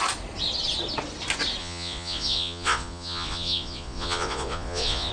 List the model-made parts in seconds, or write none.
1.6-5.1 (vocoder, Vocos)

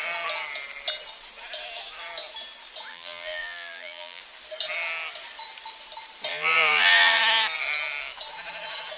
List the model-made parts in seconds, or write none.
2.9-4.2 (vocoder, BigVGAN v2); 6.3-7.2

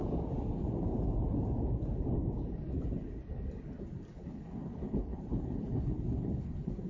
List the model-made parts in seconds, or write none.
4.1-6.9 (codec, HILCodec)

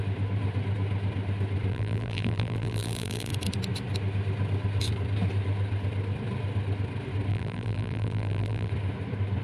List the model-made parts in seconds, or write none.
1.7-3.3 (vocoder, BigVGAN v2); 7.3-8.7

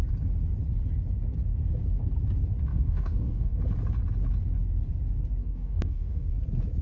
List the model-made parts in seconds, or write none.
2.7-3.6 (codec, DAC); 5.4-6.3

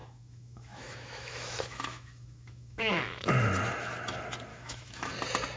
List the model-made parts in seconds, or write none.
0.0-3.3 (autoencoder, DAC-VAE); 4.5-5.1

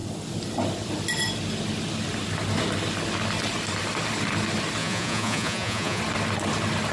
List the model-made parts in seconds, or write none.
4.8-6.0 (vocoder, Vocos)